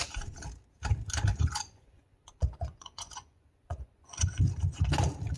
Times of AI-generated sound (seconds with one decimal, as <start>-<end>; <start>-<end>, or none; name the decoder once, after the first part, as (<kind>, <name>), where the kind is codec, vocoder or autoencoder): 1.3-4.5 (vocoder, Vocos)